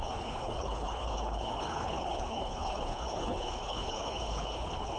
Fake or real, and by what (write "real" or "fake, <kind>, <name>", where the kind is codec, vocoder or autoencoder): fake, codec, HILCodec